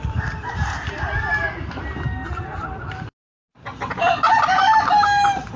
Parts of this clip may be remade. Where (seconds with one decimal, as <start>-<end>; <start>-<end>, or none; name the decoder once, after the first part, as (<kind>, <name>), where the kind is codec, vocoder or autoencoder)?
0.0-0.9 (vocoder, BigVGAN v2)